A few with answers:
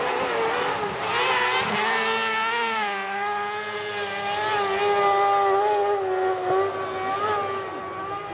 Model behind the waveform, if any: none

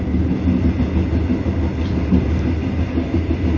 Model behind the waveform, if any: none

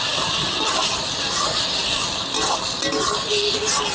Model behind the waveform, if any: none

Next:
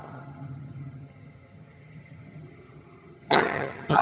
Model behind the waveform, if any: vocoder, HiFi-GAN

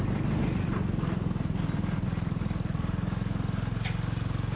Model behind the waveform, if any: none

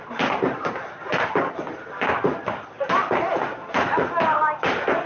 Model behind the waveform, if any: none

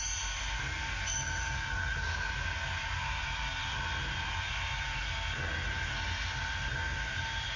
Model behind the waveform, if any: none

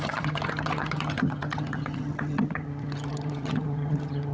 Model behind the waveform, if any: vocoder, HiFi-GAN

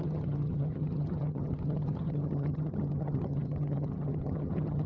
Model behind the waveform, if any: vocoder, HiFi-GAN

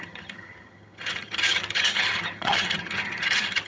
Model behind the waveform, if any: vocoder, HiFi-GAN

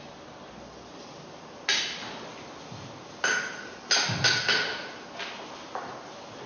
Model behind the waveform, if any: none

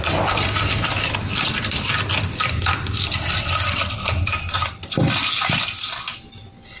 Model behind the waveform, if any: none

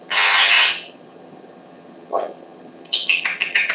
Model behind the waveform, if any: vocoder, HiFi-GAN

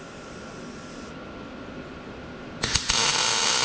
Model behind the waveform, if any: none